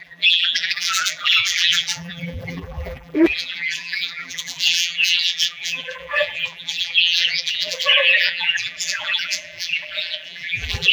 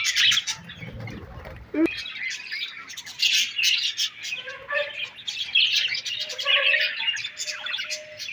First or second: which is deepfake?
first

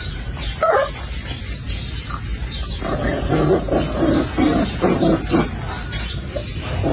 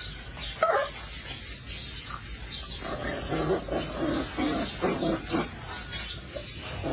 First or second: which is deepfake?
first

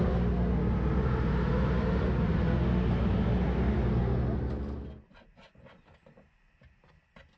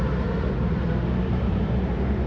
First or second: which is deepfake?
second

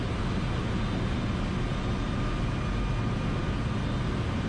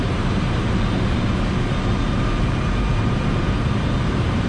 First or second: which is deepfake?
second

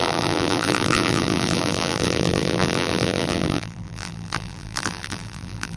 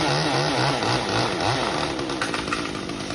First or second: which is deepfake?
first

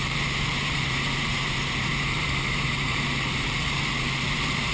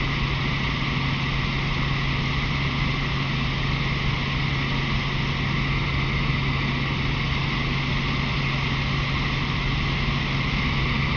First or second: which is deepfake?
first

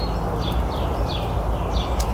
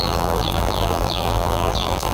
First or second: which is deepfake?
second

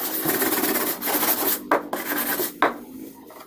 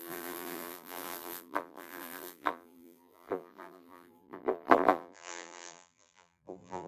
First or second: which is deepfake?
second